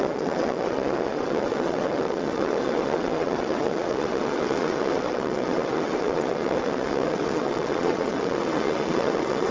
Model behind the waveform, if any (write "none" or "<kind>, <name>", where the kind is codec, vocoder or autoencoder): vocoder, WaveNeXt